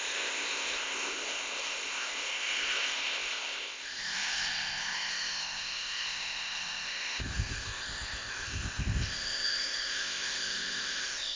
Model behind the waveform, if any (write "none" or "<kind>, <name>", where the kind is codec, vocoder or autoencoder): codec, ZipCodec